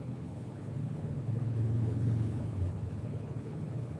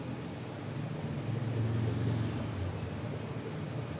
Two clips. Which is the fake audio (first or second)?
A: first